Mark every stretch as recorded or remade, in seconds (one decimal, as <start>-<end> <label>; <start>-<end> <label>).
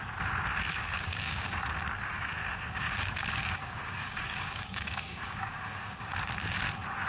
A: 0.0-0.8 recorded; 0.8-1.6 remade; 1.6-2.4 recorded; 2.4-6.1 remade; 6.1-7.1 recorded